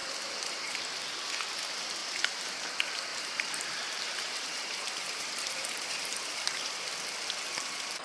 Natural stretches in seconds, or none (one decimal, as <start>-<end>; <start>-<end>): 0.8-2.0; 2.6-3.1; 6.7-8.0